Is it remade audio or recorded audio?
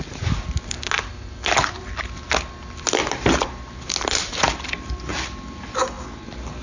recorded